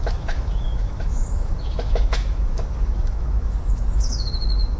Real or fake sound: fake